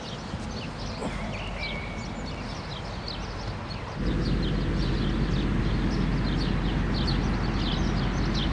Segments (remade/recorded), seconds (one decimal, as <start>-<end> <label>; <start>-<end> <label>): 0.0-8.5 recorded